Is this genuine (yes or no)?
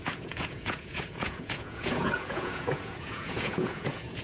no